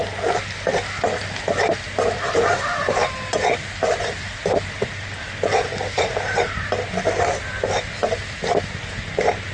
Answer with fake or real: real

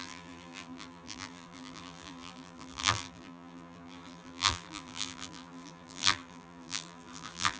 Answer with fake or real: fake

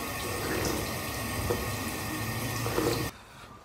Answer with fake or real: real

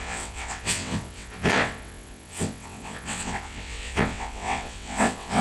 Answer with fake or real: fake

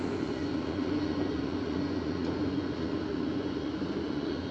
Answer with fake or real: fake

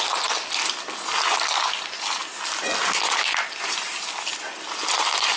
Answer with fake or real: real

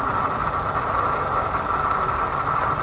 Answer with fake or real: real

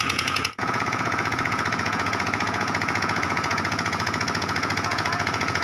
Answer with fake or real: fake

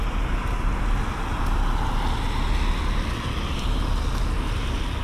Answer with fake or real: real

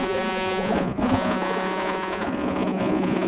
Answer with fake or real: fake